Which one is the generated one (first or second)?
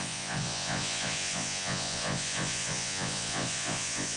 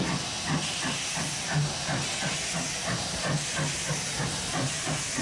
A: first